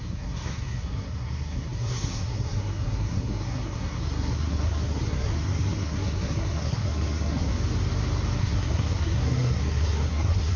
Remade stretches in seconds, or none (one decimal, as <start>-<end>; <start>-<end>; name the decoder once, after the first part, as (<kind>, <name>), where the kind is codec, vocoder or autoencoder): 0.0-7.5 (codec, SNAC); 8.4-10.6